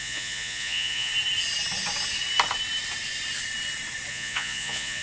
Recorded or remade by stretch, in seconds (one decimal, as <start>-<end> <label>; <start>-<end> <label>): 0.0-1.1 remade; 1.1-4.1 recorded; 4.1-5.0 remade